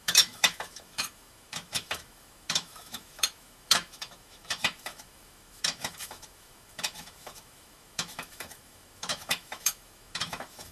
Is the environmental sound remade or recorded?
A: remade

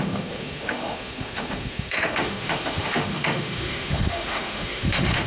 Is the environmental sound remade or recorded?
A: remade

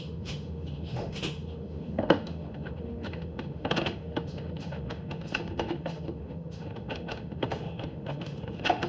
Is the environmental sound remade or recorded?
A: remade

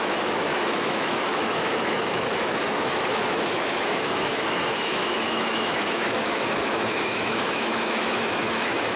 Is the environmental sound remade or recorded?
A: remade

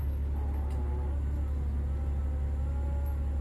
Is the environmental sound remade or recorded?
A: recorded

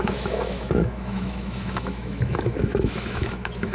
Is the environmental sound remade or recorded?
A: remade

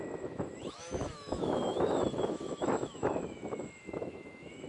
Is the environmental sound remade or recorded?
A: remade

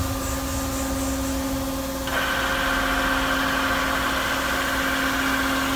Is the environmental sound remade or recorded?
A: recorded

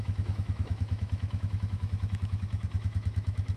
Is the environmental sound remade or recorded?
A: remade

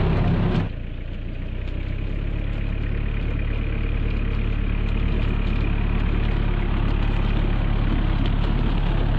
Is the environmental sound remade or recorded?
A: recorded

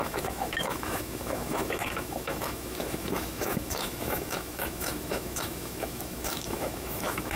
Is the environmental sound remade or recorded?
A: remade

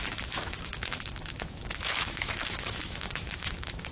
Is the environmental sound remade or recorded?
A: remade